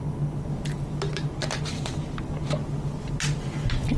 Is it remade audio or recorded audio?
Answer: recorded